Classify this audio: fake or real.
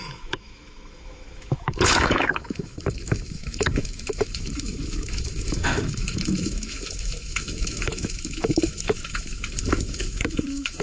fake